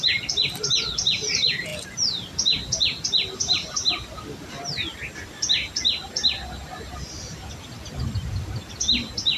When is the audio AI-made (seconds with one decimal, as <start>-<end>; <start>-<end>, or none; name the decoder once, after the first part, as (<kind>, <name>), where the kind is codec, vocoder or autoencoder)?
none